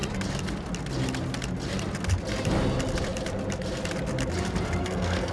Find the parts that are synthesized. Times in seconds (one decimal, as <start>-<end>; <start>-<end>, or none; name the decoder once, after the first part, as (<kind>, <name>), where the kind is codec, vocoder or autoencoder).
4.8-5.3 (codec, SNAC)